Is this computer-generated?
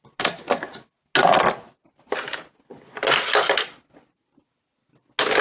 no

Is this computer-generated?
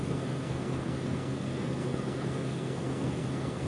yes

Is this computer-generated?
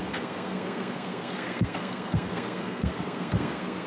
yes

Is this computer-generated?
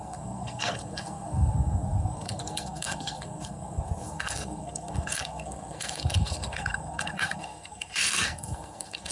yes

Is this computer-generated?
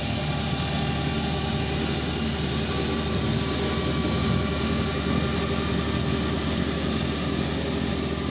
no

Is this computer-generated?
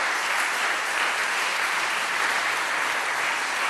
no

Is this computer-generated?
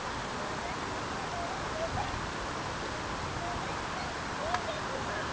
no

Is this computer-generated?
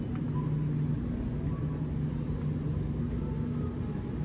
no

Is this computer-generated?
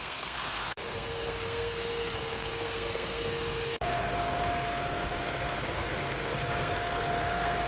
yes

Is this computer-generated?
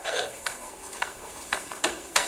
yes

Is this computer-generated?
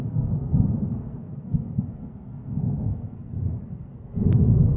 yes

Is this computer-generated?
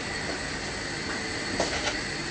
no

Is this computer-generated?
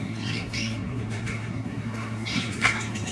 yes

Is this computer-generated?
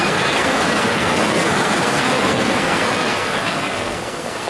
yes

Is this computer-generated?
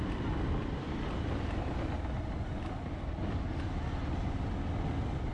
no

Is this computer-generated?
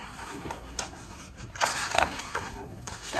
yes